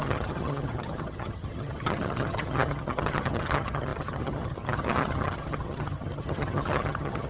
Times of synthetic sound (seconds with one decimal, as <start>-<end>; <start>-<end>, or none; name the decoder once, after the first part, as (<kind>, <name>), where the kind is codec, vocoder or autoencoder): 0.0-7.3 (vocoder, HiFi-GAN)